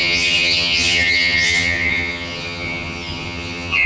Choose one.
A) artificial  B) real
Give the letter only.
A